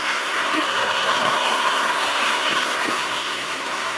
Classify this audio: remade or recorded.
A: remade